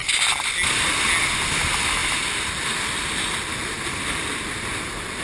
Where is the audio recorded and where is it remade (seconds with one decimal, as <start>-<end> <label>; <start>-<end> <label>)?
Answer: 0.0-5.2 recorded